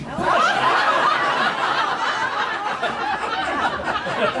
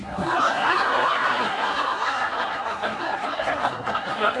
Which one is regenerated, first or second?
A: second